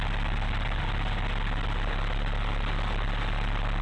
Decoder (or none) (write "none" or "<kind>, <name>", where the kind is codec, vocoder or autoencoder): none